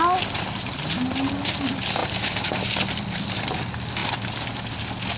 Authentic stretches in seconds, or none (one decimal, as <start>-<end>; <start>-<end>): 0.0-2.0; 3.5-4.0; 4.6-5.2